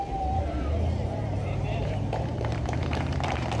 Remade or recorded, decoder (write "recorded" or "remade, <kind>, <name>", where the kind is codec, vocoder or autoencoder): remade, vocoder, BigVGAN v2